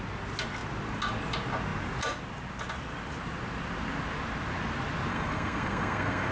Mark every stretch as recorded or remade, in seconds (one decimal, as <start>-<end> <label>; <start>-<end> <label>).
0.0-5.1 recorded; 5.1-6.3 remade